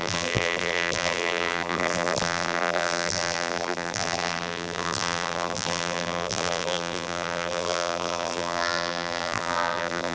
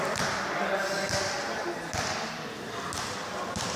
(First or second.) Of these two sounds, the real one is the second